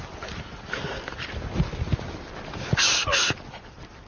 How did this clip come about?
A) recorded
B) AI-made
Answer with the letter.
A